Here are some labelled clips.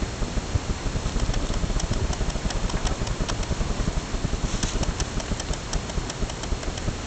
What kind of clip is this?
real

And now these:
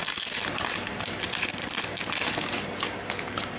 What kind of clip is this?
real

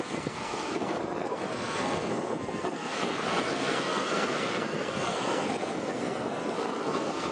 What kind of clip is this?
fake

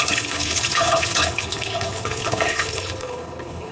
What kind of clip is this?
fake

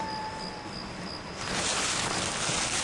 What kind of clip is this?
real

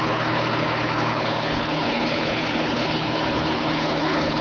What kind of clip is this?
fake